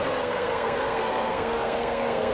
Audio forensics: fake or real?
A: fake